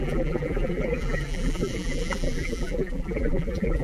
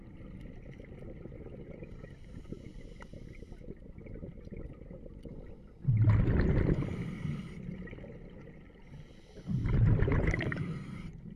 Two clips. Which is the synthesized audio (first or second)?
first